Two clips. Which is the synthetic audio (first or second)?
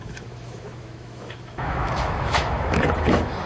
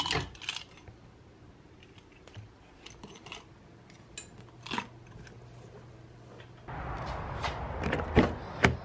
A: first